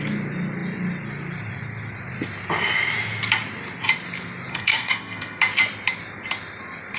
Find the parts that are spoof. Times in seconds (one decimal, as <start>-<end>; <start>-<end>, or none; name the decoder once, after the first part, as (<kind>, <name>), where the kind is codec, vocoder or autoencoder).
4.5-5.4 (codec, SNAC)